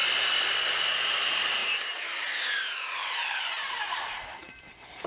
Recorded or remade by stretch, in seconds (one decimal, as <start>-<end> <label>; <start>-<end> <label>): 0.0-1.2 recorded; 1.2-5.1 remade